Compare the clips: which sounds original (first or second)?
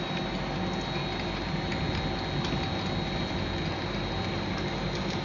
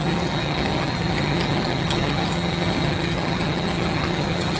first